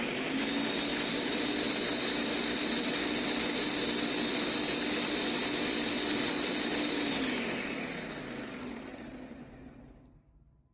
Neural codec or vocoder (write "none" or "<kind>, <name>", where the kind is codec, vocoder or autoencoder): none